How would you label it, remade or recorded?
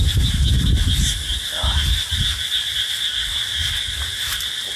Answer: recorded